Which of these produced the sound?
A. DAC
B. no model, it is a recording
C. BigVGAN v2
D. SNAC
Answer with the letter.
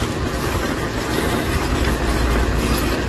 B